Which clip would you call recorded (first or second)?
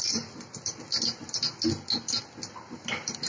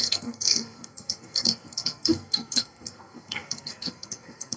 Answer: first